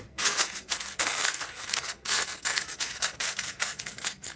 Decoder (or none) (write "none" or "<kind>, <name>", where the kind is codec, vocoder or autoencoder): codec, SNAC